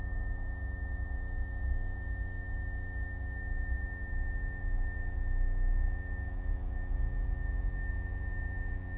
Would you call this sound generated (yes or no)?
no